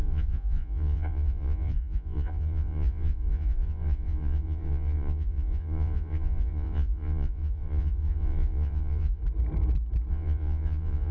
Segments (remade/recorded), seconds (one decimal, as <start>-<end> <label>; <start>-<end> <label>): 0.0-9.2 remade; 9.2-10.1 recorded; 10.1-11.1 remade